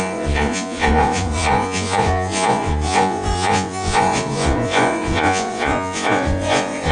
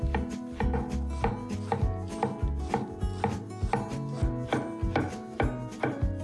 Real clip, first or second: second